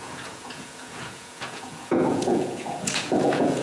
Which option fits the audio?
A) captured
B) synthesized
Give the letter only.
B